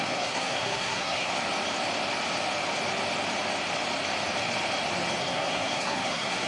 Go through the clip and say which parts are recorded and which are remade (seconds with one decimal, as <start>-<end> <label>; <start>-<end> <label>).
0.0-1.3 remade; 1.3-5.2 recorded; 5.2-6.5 remade

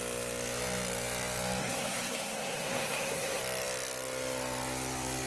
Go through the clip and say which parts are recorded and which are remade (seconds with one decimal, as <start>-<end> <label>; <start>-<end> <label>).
0.0-1.6 recorded; 1.6-3.4 remade; 3.4-5.3 recorded

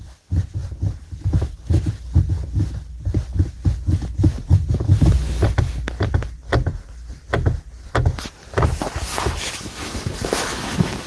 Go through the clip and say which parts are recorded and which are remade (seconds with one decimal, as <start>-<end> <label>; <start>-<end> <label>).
0.0-9.1 recorded; 9.1-11.1 remade

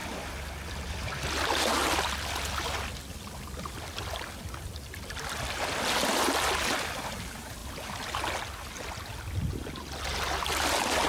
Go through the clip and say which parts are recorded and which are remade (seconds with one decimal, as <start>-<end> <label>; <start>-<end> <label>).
0.0-11.1 recorded

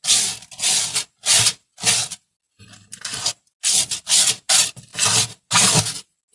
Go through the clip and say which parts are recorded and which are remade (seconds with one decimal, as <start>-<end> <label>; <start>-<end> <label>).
0.0-6.3 recorded

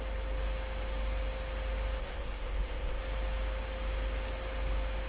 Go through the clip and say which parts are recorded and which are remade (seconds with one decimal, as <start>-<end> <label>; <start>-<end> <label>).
0.0-2.0 recorded; 2.0-3.0 remade; 3.0-5.1 recorded

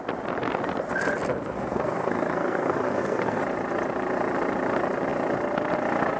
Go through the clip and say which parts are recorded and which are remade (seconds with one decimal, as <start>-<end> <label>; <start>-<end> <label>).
0.0-1.3 recorded; 1.3-3.4 remade; 3.4-6.2 recorded

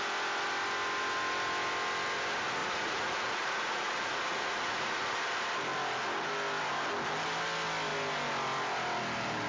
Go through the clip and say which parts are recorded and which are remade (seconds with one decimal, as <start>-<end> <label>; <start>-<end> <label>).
0.0-2.6 recorded; 2.6-5.2 remade; 5.2-9.5 recorded